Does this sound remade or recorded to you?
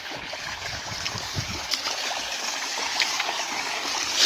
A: remade